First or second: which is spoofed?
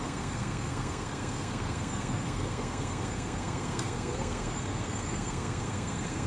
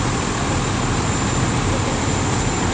first